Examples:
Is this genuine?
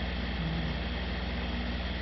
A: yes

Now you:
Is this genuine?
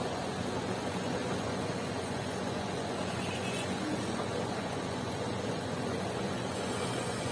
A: no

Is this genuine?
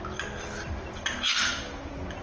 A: yes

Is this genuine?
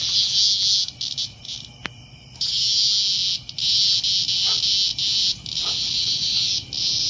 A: yes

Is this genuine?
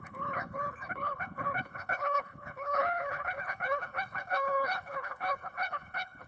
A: no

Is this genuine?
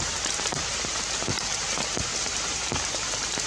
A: no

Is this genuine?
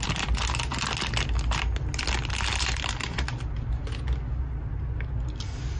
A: yes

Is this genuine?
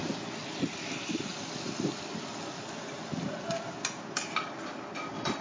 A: yes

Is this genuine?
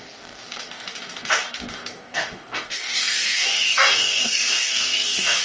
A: no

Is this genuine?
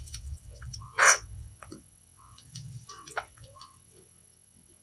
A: no